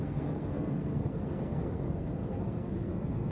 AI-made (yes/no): yes